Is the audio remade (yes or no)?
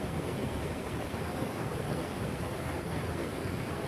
yes